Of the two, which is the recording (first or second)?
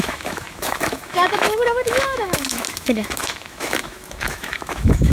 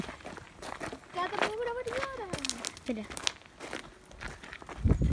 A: second